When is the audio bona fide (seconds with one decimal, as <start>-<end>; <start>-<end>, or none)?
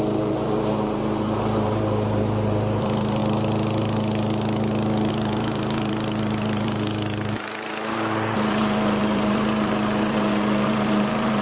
3.2-5.1